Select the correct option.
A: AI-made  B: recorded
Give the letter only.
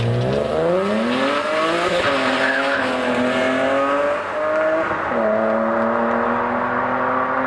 B